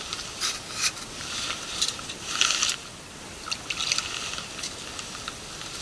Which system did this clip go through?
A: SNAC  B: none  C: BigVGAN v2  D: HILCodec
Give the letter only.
B